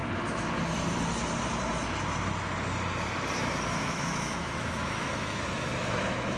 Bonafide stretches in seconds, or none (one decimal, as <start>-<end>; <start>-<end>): 0.0-3.8

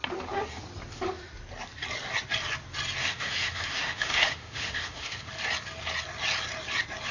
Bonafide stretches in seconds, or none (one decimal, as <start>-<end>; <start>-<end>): 0.0-3.0; 5.3-7.1

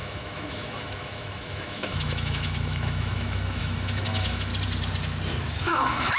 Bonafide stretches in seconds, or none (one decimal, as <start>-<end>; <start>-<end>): 4.5-5.6

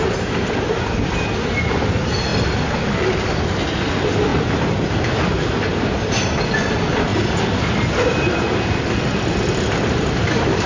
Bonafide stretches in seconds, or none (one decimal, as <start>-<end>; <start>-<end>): 0.0-10.7

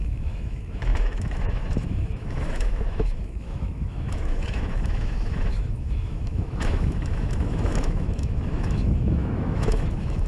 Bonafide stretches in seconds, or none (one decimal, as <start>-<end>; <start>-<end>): none

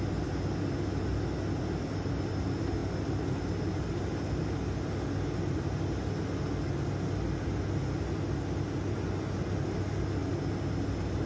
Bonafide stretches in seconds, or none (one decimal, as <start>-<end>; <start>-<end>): 0.0-11.3

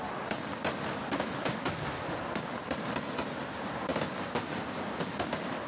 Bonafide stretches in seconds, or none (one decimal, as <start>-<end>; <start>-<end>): 0.0-5.7